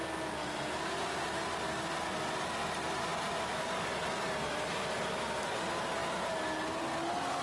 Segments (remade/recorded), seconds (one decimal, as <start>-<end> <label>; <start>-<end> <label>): 0.0-7.4 recorded